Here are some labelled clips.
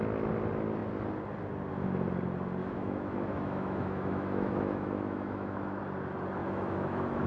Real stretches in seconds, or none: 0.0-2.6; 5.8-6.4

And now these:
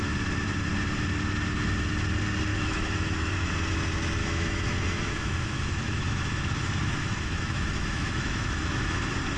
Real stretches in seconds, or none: 0.0-2.5; 3.5-4.2; 9.0-9.4

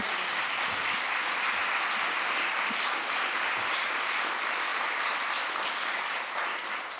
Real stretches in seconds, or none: 0.0-7.0

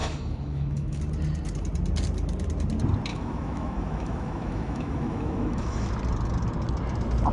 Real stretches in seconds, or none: 1.0-3.1; 5.9-7.3

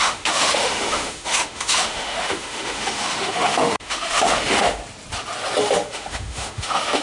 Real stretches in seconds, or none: 4.8-5.6

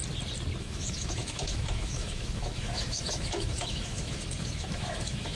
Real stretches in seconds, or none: 0.0-0.6

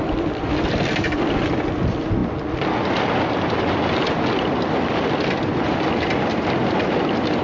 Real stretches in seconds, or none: 0.0-7.4

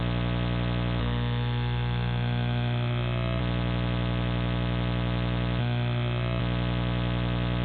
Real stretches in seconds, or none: 0.0-1.0; 3.4-5.6; 6.4-7.6